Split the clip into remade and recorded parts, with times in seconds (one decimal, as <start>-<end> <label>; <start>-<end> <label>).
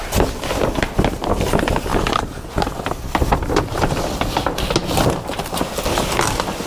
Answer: 0.0-1.9 recorded; 1.9-2.7 remade; 2.7-4.8 recorded; 4.8-5.6 remade; 5.6-6.7 recorded